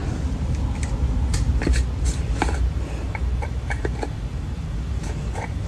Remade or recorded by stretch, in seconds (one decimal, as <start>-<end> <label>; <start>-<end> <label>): 0.0-2.2 recorded; 2.2-5.7 remade